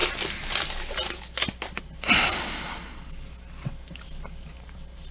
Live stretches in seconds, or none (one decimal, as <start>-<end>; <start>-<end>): 0.0-5.1